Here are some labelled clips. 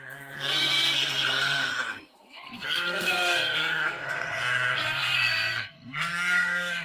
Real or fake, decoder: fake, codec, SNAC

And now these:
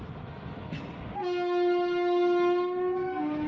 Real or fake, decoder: real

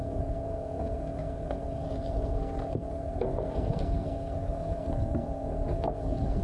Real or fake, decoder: fake, codec, SNAC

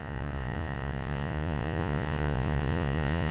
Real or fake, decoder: fake, vocoder, Vocos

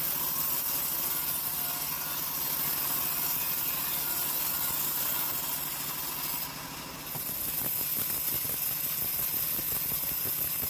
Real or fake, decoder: real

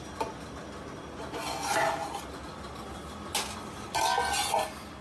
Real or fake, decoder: real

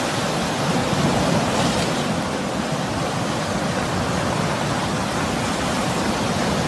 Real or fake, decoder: real